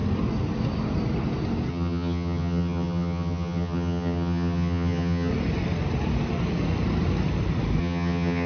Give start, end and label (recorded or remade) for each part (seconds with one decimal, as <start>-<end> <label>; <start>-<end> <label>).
0.0-1.7 recorded; 1.7-5.3 remade; 5.3-7.8 recorded; 7.8-8.5 remade